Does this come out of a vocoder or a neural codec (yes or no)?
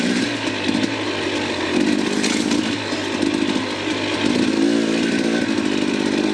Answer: no